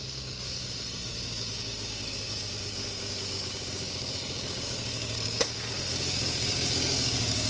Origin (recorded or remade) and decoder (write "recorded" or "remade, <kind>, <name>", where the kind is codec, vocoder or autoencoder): remade, codec, DAC